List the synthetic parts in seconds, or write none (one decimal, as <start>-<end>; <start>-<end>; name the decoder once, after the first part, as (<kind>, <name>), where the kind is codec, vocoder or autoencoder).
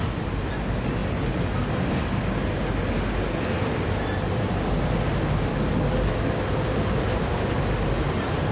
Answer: 5.5-6.1 (codec, DAC)